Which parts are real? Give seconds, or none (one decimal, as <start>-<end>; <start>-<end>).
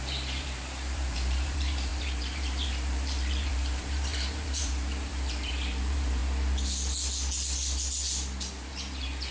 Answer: 6.2-8.5